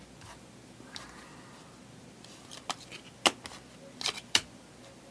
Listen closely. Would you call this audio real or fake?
real